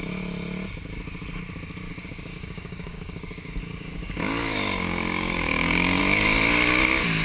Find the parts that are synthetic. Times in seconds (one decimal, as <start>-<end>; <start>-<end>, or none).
1.9-6.0